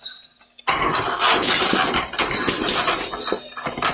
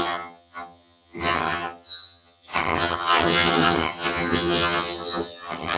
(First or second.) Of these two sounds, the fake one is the second